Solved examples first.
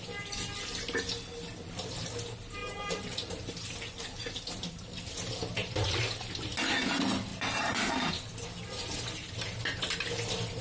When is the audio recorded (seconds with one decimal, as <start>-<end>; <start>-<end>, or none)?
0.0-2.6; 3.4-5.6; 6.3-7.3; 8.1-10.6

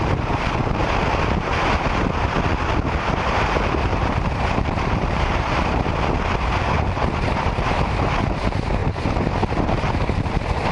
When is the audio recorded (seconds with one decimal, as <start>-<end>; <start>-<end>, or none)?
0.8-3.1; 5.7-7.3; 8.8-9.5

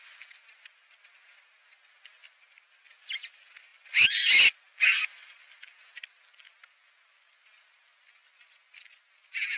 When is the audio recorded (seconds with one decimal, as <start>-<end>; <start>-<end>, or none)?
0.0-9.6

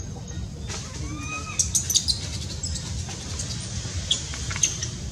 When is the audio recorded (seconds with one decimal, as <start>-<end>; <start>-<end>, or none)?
0.0-4.3

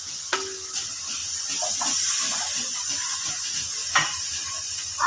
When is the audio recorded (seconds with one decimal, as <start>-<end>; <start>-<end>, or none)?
0.0-1.2; 3.3-5.1

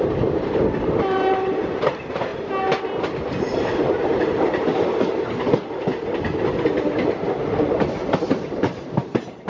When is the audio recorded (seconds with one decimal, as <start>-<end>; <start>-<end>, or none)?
2.3-3.0; 4.7-8.2

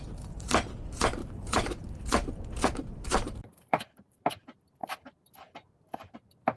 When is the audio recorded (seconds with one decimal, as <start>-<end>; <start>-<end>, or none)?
0.0-1.2; 4.3-4.8; 5.3-6.6

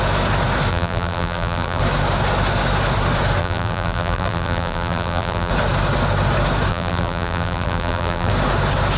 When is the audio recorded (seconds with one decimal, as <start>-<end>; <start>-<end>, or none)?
0.0-0.7; 1.8-3.4; 5.5-6.7; 8.3-9.0